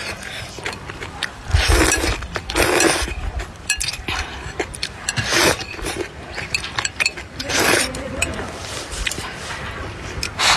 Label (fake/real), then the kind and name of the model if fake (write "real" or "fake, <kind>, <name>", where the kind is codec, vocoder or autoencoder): fake, vocoder, BigVGAN v2